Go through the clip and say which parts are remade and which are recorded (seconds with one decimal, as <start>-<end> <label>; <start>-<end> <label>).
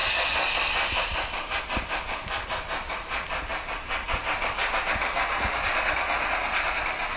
0.0-7.2 recorded